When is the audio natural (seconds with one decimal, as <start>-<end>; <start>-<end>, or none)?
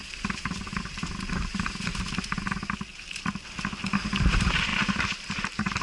1.9-4.3